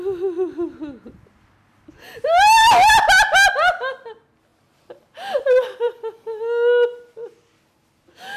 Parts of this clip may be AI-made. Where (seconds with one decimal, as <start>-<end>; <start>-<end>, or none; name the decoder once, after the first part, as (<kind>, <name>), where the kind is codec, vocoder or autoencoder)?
4.5-6.0 (vocoder, BigVGAN v2)

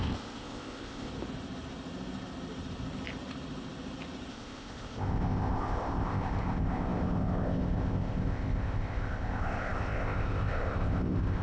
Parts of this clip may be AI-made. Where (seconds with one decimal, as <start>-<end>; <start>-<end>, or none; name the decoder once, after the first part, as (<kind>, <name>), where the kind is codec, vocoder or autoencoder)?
0.0-1.1 (codec, ZipCodec); 4.3-11.4